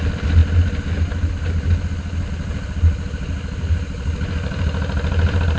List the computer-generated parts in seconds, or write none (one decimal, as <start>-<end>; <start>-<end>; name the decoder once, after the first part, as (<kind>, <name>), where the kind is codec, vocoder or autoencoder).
none